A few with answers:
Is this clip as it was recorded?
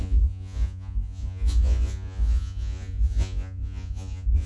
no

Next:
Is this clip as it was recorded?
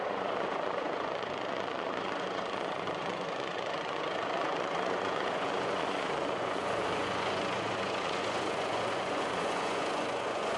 no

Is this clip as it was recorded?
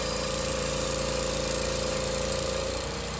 no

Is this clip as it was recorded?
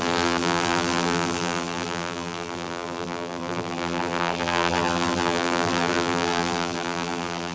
no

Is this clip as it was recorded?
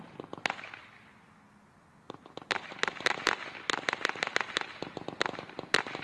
yes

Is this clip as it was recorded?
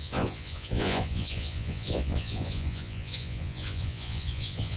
no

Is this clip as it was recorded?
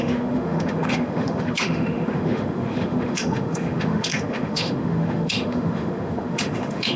no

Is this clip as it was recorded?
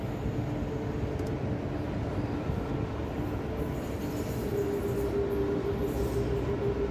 yes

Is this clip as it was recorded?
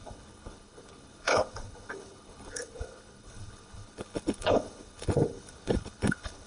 no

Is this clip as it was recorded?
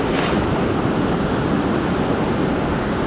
yes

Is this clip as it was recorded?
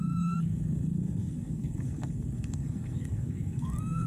no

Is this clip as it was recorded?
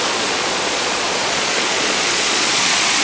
no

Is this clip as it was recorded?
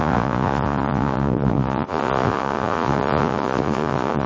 no